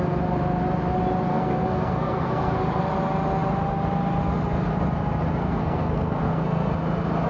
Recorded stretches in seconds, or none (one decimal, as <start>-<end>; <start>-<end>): 0.0-1.3; 2.8-5.4; 6.7-7.3